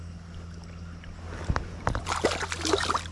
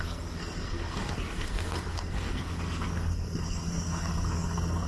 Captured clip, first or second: first